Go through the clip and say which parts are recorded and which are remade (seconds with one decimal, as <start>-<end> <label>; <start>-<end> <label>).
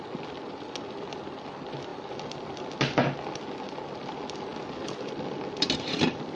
0.0-6.4 recorded